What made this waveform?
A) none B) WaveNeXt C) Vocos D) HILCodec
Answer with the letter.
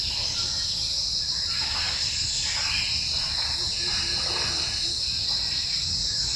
A